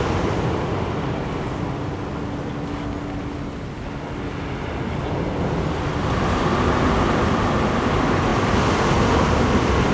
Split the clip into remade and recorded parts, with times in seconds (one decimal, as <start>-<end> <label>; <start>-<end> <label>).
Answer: 0.0-9.9 recorded